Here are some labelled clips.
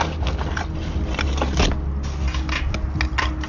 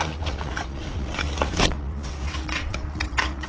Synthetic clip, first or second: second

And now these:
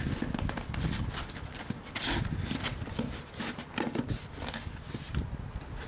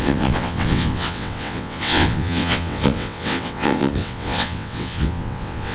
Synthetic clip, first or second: second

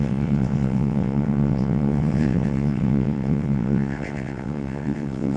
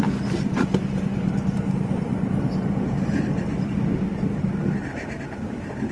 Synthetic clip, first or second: first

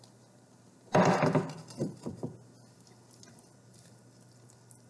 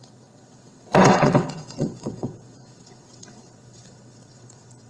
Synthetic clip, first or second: second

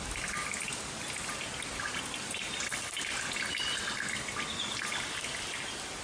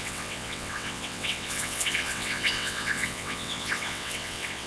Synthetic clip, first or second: second